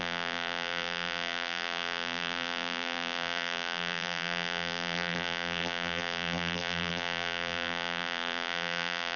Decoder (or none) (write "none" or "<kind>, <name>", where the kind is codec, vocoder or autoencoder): vocoder, BigVGAN v2